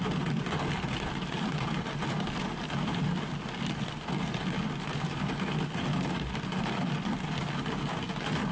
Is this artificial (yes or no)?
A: no